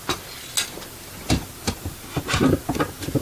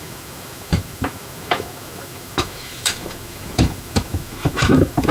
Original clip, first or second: first